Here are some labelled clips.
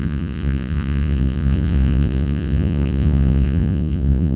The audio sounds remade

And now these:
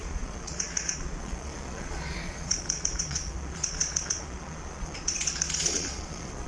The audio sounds remade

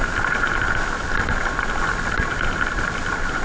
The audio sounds recorded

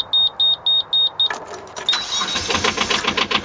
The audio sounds recorded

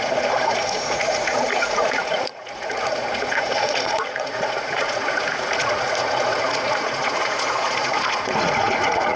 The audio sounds remade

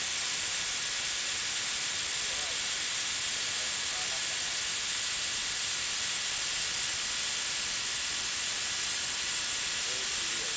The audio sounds recorded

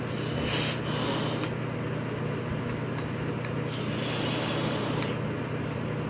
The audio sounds recorded